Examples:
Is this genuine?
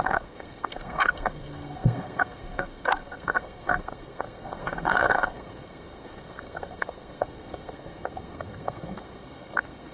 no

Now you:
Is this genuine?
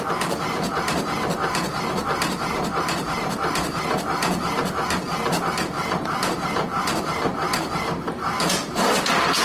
no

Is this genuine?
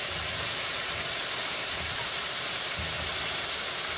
no